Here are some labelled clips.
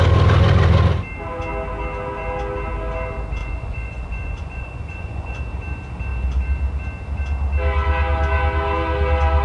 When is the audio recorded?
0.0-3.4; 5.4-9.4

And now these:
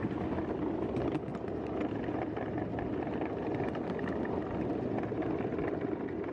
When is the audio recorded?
0.0-6.3

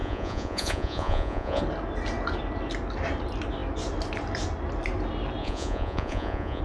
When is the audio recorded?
1.6-5.4

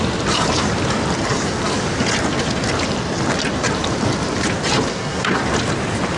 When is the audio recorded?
0.0-4.9; 5.4-6.2

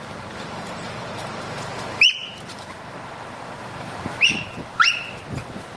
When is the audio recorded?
none

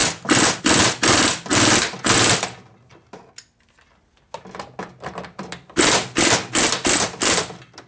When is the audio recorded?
0.0-0.6; 1.5-5.4

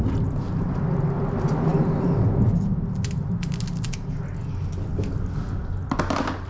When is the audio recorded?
0.0-6.5